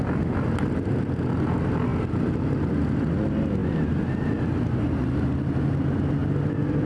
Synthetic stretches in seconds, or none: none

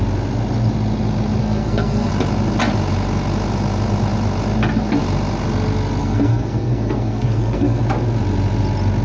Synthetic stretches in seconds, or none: 1.4-2.1 (codec, SNAC); 6.0-7.8

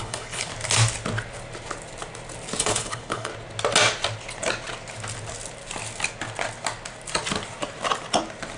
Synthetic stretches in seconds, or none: 0.0-0.5 (codec, HILCodec); 2.6-3.3

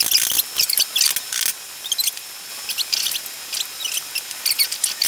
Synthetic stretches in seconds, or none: none

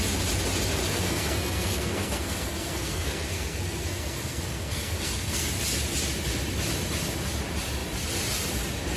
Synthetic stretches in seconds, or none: 0.8-5.5 (codec, SNAC)

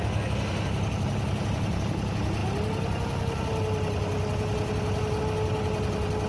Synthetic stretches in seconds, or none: none

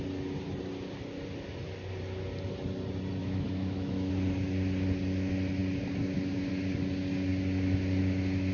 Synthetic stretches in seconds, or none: 3.2-4.1 (autoencoder, DAC-VAE)